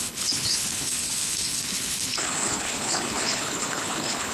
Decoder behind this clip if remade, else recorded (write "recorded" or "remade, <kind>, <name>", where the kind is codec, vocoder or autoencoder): remade, codec, HILCodec